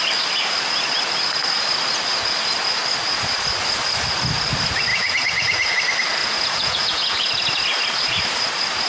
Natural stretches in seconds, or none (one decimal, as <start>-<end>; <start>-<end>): 0.0-4.9; 5.7-6.2; 7.3-8.9